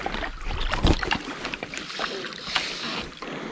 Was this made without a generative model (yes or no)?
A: no